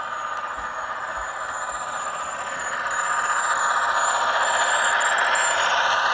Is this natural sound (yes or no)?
yes